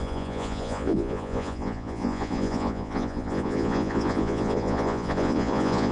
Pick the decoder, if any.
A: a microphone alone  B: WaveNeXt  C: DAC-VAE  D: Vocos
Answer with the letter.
D